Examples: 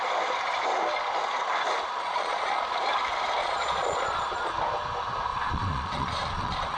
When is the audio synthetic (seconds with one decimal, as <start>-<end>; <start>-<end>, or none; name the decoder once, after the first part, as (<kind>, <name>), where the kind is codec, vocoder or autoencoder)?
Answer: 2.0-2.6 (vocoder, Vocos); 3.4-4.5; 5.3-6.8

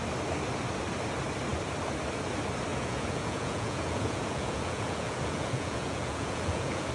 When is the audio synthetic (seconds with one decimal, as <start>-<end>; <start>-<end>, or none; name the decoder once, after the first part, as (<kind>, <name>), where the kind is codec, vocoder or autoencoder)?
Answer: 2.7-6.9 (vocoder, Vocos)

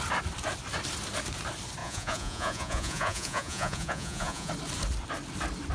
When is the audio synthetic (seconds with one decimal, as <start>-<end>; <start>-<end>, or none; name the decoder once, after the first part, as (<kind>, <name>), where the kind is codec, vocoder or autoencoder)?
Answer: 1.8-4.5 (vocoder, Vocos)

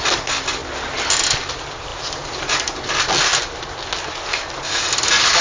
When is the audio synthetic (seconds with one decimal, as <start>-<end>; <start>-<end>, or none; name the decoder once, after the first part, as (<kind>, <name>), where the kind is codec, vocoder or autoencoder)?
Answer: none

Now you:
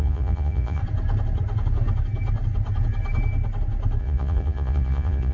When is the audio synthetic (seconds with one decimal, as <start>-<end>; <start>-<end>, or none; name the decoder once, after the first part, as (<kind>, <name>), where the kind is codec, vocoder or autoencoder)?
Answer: 0.0-0.8 (vocoder, Vocos); 4.0-5.3